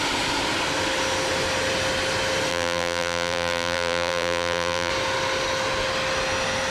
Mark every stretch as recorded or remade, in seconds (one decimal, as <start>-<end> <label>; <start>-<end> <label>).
0.0-2.5 recorded; 2.5-4.9 remade; 4.9-6.7 recorded

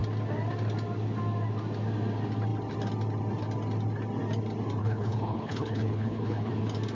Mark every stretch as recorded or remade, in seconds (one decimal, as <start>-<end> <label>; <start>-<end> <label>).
0.0-4.8 recorded; 4.8-6.5 remade; 6.5-6.9 recorded

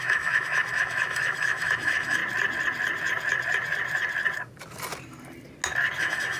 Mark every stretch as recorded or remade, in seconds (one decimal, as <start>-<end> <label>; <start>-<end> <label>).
0.0-2.2 remade; 2.2-6.0 recorded; 6.0-6.4 remade